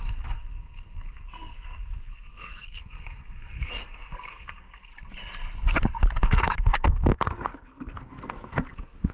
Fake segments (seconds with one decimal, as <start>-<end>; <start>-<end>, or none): 0.0-4.9; 6.2-9.1